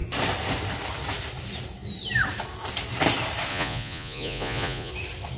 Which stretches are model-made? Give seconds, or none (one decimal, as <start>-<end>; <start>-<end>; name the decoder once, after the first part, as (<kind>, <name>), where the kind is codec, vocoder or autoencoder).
3.5-4.9 (vocoder, Vocos)